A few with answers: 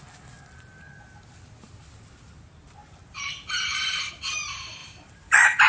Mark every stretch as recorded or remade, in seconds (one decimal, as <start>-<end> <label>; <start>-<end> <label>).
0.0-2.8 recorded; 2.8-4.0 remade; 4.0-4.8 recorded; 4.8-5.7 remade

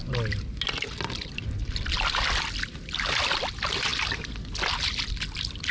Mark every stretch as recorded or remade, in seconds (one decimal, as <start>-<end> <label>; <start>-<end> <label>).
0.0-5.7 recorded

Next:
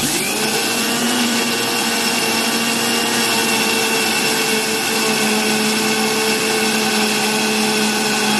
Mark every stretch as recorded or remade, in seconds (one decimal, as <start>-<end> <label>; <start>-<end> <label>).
0.0-0.5 recorded; 0.5-2.2 remade; 2.2-8.4 recorded

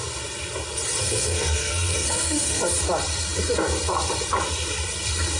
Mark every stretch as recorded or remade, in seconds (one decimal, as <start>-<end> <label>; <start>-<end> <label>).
0.0-1.0 recorded; 1.0-2.6 remade; 2.6-5.4 recorded

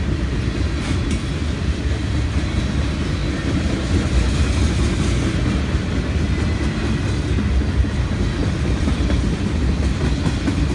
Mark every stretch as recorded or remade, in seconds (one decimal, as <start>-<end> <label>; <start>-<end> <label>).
0.0-8.4 recorded; 8.4-9.7 remade; 9.7-10.7 recorded

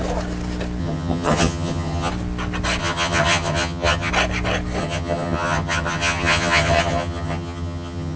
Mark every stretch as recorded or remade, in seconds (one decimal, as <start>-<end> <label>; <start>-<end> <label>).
0.0-0.8 recorded; 0.8-2.1 remade; 2.1-2.8 recorded; 2.8-4.1 remade; 4.1-4.8 recorded; 4.8-8.2 remade